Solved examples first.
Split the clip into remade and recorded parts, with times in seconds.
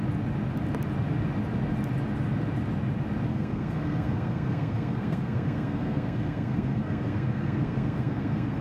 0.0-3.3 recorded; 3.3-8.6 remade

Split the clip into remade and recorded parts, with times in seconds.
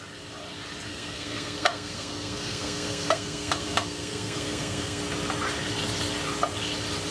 0.0-0.9 recorded; 0.9-5.0 remade; 5.0-7.1 recorded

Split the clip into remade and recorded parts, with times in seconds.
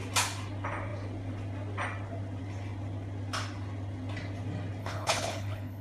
0.0-4.8 recorded; 4.8-5.8 remade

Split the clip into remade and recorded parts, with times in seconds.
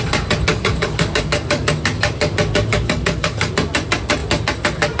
0.0-0.5 recorded; 0.5-1.7 remade; 1.7-2.7 recorded; 2.7-3.5 remade; 3.5-5.0 recorded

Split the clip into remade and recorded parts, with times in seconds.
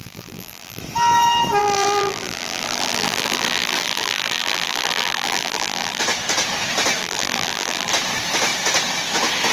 0.0-0.8 remade; 0.8-1.6 recorded; 1.6-6.0 remade; 6.0-7.0 recorded; 7.0-7.9 remade; 7.9-9.5 recorded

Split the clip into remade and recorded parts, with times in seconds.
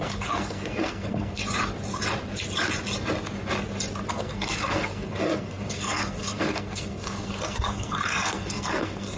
0.0-1.4 remade; 1.4-4.1 recorded; 4.1-9.2 remade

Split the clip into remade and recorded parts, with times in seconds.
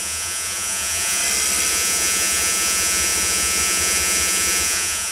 0.0-1.2 remade; 1.2-1.7 recorded; 1.7-5.1 remade